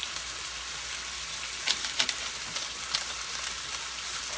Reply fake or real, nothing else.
real